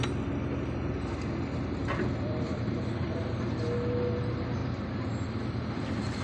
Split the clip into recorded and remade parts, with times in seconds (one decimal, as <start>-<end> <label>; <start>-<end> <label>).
0.0-1.8 recorded; 1.8-3.4 remade; 3.4-4.6 recorded; 4.6-5.1 remade; 5.1-6.2 recorded